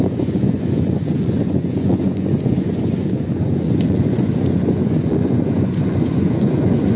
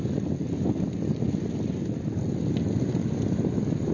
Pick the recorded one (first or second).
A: second